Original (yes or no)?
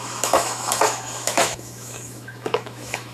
no